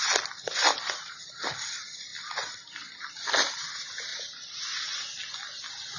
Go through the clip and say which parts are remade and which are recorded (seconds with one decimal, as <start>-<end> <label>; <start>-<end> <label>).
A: 0.0-6.0 recorded